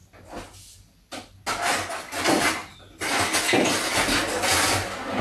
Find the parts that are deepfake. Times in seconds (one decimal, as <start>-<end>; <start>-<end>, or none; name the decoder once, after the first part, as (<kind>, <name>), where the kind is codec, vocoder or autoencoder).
none